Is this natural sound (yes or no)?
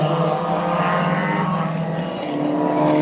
yes